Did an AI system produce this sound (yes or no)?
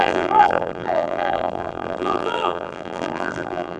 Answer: yes